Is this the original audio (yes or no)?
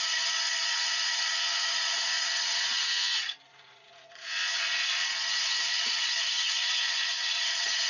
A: no